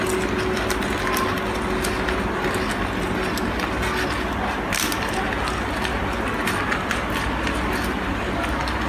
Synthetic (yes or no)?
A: no